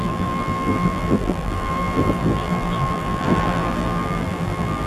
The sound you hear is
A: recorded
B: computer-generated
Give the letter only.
B